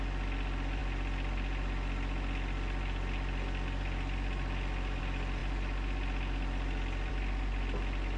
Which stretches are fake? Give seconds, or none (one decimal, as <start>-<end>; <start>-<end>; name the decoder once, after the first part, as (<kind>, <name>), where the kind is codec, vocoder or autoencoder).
none